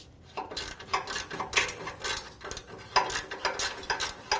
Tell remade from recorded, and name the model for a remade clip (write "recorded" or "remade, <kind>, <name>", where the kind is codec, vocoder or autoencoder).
recorded